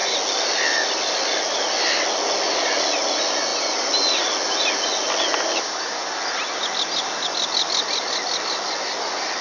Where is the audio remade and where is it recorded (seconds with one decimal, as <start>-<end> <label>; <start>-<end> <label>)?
0.0-9.4 recorded